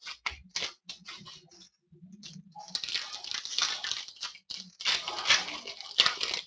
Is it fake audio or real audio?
real